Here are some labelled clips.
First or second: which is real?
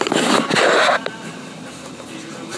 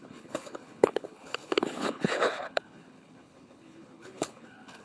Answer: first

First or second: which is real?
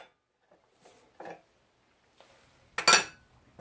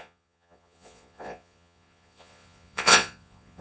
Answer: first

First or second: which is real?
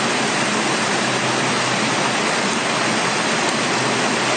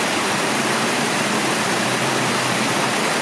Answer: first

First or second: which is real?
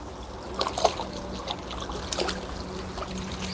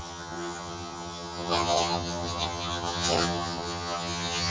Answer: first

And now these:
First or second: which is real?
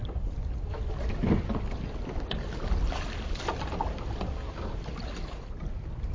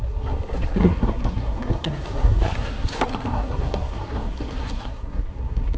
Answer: first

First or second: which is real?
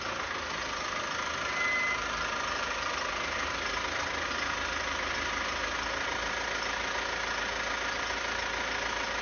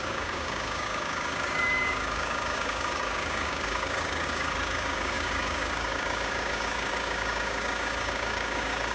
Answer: first